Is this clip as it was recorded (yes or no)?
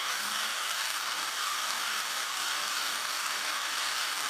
no